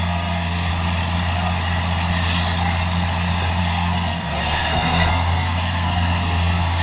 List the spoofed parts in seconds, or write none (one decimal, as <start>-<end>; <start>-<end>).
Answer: 0.0-0.7; 3.6-6.8